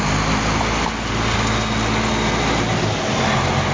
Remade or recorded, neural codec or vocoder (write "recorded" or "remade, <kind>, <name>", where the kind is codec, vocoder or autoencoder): recorded